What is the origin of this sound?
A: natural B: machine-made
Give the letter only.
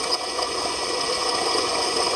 B